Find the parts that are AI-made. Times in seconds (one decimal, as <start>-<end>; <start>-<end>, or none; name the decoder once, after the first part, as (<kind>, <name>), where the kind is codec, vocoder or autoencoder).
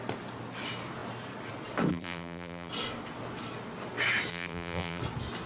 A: 1.9-2.7 (vocoder, BigVGAN v2); 4.3-5.0